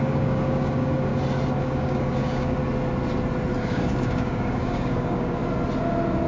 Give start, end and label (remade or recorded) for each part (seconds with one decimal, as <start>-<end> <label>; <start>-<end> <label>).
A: 0.0-1.1 remade; 1.1-1.6 recorded; 1.6-2.6 remade; 2.6-3.6 recorded; 3.6-5.4 remade; 5.4-6.3 recorded